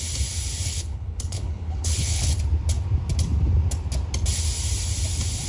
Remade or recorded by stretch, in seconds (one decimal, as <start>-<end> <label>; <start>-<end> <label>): 0.0-0.7 recorded; 0.7-2.4 remade; 2.4-5.5 recorded